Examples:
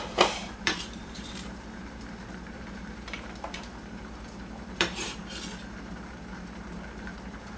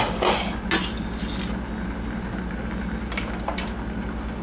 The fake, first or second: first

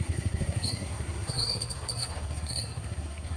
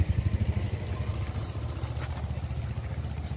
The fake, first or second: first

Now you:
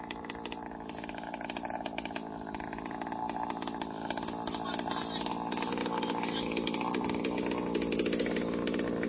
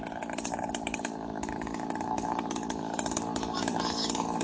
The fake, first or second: second